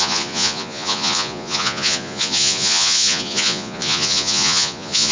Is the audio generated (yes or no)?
yes